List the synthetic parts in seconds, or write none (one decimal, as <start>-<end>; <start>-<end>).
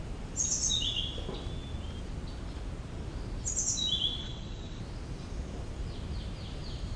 4.2-4.8